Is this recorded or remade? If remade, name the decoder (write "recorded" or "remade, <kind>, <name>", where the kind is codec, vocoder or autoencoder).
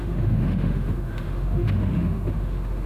remade, autoencoder, DAC-VAE